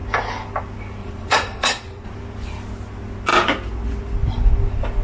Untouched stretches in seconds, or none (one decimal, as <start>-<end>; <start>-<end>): 0.0-1.0; 2.1-5.0